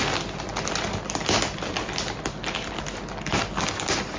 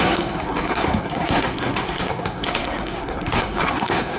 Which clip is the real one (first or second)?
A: first